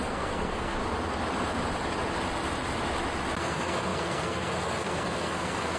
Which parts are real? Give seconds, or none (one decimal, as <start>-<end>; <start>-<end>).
0.8-3.4